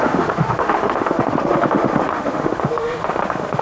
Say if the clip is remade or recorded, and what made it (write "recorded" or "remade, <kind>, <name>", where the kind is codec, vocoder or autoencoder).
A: remade, autoencoder, DAC-VAE